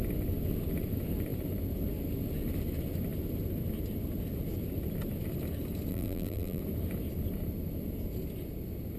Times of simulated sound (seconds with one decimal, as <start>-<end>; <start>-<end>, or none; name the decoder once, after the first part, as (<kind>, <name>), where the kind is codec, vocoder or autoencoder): 5.9-6.6 (vocoder, BigVGAN v2)